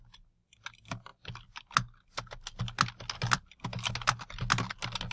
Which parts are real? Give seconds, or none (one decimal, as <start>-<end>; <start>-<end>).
0.0-5.1